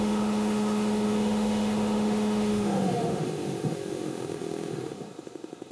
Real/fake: fake